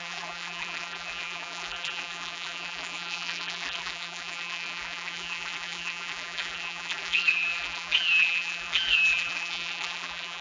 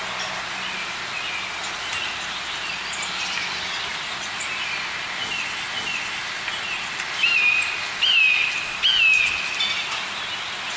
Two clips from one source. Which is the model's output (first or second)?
first